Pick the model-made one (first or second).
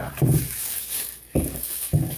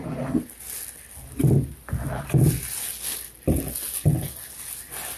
first